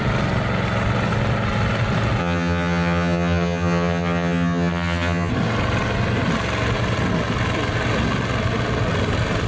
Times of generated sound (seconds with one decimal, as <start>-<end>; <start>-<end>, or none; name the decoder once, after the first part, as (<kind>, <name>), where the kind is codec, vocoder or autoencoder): 2.2-5.3 (vocoder, HiFi-GAN)